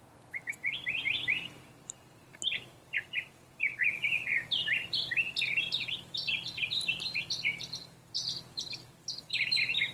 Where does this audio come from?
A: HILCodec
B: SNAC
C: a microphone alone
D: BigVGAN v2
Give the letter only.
D